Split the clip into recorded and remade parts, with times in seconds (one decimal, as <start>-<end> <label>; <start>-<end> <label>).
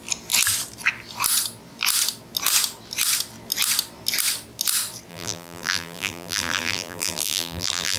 0.0-5.1 recorded; 5.1-8.0 remade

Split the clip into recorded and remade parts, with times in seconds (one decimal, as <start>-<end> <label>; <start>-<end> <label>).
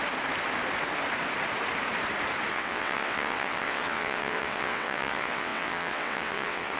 0.0-2.5 recorded; 2.5-6.8 remade